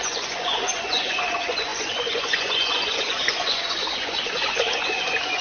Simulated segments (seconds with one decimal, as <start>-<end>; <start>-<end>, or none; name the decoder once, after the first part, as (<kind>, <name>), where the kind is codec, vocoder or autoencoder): 0.0-5.4 (vocoder, Vocos)